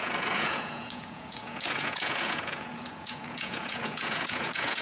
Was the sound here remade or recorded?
remade